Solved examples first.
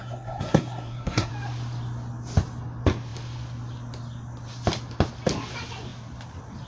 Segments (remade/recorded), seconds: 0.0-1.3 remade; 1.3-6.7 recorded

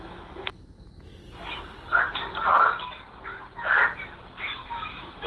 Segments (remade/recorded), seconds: 0.0-1.2 remade; 1.2-4.4 recorded; 4.4-5.3 remade

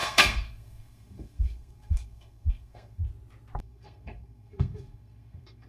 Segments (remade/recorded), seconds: 0.0-3.0 remade; 3.0-3.6 recorded; 3.6-5.7 remade

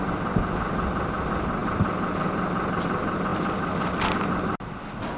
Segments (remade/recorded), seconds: 0.0-5.2 recorded

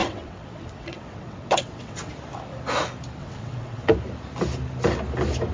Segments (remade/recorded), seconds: 0.0-2.1 remade; 2.1-3.2 recorded; 3.2-3.9 remade; 3.9-5.5 recorded

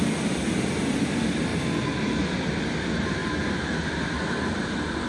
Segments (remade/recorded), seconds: 0.0-5.1 recorded

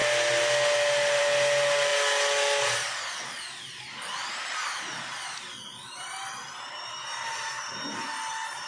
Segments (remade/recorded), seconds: 0.0-8.7 recorded